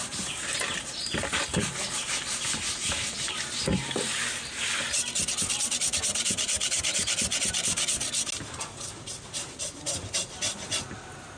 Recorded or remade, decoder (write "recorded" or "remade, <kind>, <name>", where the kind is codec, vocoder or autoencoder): recorded